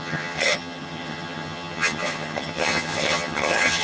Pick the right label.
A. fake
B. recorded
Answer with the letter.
A